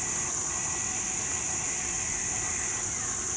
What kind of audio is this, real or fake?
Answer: real